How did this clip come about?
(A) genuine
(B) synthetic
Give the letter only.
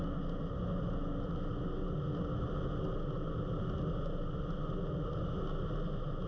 A